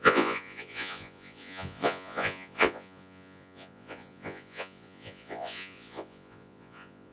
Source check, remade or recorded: remade